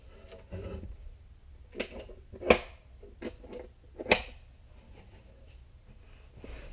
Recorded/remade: recorded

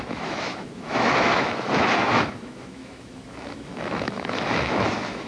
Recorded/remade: remade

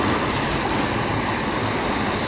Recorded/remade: recorded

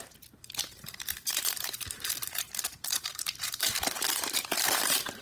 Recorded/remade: remade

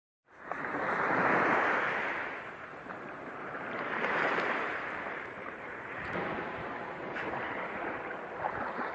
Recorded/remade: remade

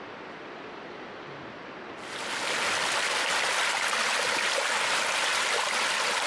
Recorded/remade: recorded